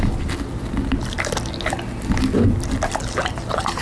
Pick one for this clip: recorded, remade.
recorded